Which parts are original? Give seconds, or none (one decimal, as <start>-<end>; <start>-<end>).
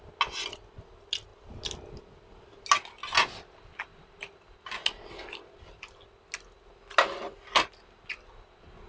0.0-8.9